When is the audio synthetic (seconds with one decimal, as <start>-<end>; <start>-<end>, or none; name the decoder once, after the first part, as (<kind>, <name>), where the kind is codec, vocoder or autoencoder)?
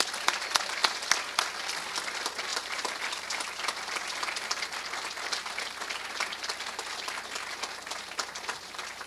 2.5-4.8 (vocoder, BigVGAN v2)